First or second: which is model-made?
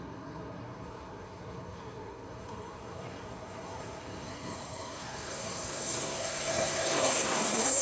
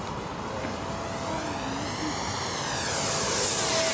first